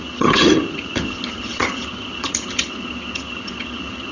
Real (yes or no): no